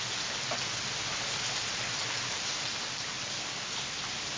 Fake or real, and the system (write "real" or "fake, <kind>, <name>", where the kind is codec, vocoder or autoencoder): real